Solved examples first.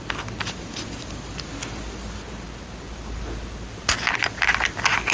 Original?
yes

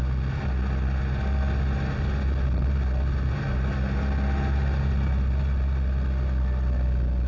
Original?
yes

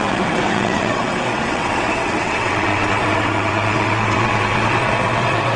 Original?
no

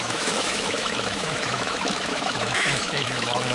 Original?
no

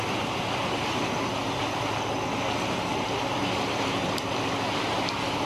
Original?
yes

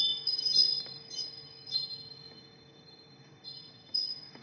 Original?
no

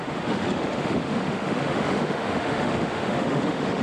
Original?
no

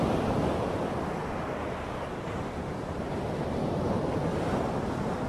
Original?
yes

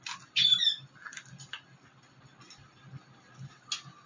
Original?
yes